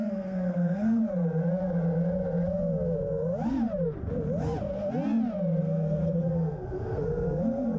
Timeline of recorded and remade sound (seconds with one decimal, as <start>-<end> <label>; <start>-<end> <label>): 0.0-1.0 remade; 1.0-5.6 recorded; 5.6-7.8 remade